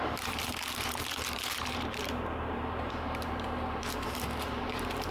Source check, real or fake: fake